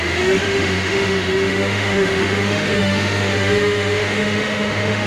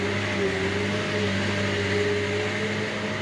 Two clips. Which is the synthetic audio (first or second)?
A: first